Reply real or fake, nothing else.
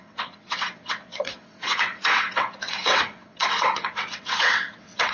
fake